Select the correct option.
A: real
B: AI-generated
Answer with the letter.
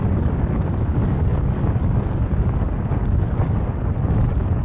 B